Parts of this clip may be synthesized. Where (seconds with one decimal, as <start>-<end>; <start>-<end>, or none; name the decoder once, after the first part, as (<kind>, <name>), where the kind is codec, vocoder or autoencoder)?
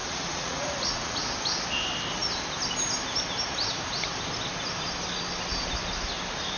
0.0-1.2 (vocoder, Vocos)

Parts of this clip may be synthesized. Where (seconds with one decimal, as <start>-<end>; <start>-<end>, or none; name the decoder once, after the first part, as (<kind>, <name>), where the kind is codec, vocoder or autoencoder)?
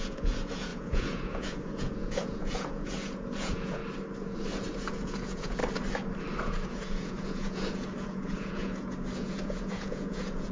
0.0-3.8 (vocoder, Vocos); 4.9-5.6; 6.4-10.5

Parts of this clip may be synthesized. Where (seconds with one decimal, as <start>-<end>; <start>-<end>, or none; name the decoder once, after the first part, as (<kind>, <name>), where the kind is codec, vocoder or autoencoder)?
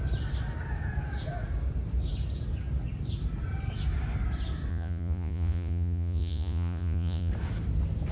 4.7-7.3 (vocoder, Vocos)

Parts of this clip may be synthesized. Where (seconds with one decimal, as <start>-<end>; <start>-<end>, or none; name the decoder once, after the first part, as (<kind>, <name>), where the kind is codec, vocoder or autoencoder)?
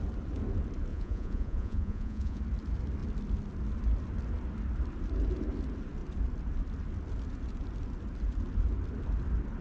0.9-2.4 (vocoder, Vocos)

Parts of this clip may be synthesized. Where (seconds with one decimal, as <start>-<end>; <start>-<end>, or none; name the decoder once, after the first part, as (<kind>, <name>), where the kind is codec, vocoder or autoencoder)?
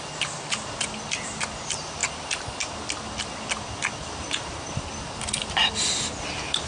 none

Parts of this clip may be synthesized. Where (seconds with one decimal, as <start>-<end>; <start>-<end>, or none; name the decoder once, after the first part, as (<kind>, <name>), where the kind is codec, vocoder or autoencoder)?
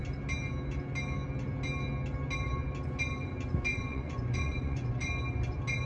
3.7-5.1 (vocoder, Vocos)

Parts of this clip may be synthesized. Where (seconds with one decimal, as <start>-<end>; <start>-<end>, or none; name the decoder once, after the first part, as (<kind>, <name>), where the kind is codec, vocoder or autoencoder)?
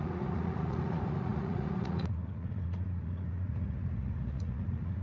0.0-5.0 (vocoder, Vocos)